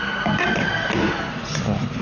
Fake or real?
real